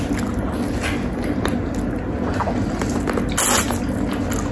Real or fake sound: real